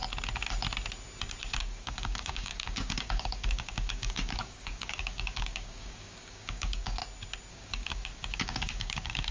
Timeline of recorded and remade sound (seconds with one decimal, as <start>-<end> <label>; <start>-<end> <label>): 0.0-1.6 recorded; 1.6-7.0 remade; 7.0-7.5 recorded; 7.5-9.3 remade